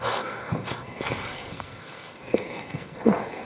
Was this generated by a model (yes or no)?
yes